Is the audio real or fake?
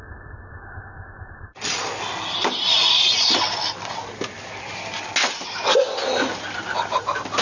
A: real